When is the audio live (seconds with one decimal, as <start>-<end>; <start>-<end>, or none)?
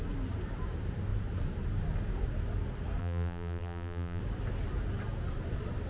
0.0-3.0; 4.2-5.9